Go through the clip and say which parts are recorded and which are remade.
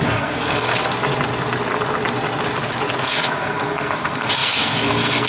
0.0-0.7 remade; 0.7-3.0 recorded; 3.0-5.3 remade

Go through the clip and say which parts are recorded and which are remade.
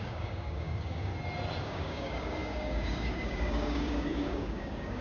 0.0-1.1 remade; 1.1-1.6 recorded; 1.6-5.0 remade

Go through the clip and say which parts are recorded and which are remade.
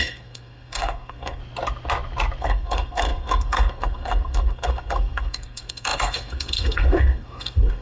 0.0-1.4 remade; 1.4-2.4 recorded; 2.4-7.8 remade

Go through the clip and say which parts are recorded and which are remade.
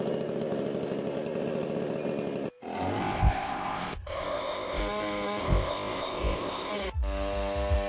0.0-3.0 recorded; 3.0-4.8 remade; 4.8-5.4 recorded; 5.4-6.7 remade; 6.7-7.9 recorded